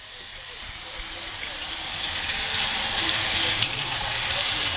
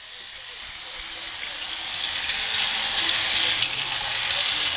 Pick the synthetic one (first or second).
first